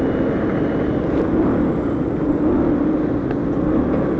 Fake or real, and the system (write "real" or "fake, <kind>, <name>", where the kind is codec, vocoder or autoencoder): real